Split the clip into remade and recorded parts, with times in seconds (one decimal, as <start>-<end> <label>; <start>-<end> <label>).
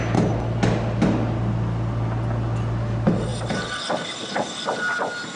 0.0-5.4 recorded